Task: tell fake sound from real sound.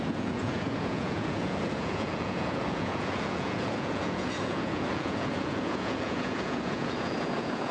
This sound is fake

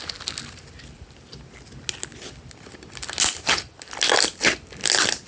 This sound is real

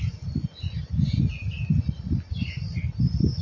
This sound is real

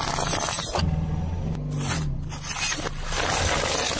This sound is real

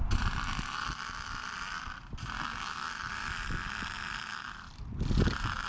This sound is real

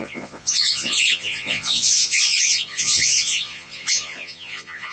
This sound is fake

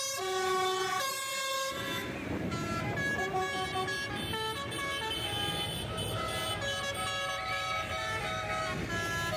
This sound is real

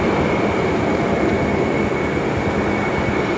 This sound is real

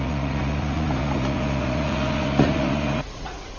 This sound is fake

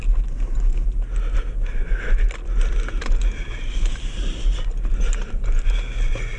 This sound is real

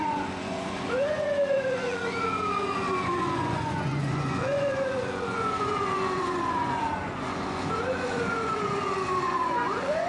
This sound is fake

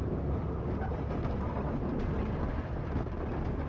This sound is real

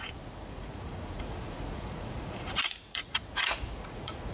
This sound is fake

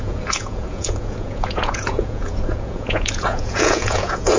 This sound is fake